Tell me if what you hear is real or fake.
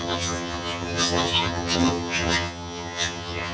fake